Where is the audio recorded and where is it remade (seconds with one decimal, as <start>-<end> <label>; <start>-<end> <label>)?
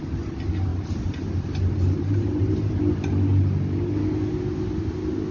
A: 0.0-5.3 recorded